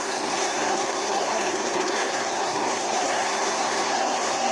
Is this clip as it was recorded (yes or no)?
no